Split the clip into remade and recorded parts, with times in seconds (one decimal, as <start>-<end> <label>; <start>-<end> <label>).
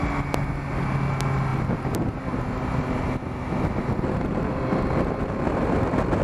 0.0-6.2 recorded